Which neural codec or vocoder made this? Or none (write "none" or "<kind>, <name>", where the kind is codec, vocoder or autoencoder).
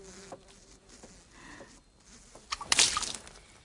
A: none